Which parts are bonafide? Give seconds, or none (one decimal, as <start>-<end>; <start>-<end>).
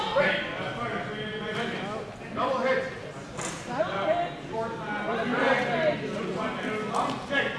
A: 0.0-7.6